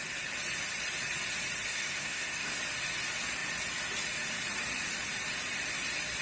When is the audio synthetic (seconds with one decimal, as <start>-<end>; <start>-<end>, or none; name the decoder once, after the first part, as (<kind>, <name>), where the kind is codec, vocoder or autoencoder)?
1.7-2.6 (codec, SNAC)